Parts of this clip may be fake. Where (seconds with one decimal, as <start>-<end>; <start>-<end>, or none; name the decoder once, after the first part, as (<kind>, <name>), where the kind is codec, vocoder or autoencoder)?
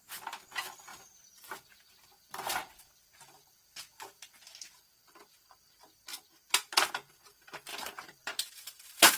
0.9-2.9 (vocoder, BigVGAN v2); 7.7-9.2